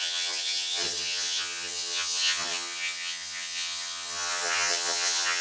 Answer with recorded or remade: remade